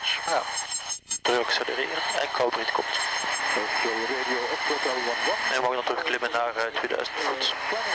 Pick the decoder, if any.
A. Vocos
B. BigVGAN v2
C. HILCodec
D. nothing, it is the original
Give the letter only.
D